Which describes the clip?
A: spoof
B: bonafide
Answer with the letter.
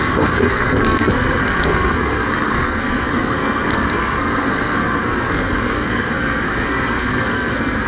A